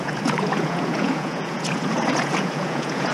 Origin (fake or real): fake